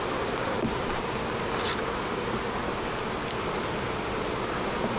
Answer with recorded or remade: recorded